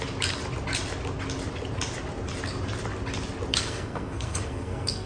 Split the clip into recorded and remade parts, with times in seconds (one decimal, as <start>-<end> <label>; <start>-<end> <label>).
0.0-3.5 recorded; 3.5-5.1 remade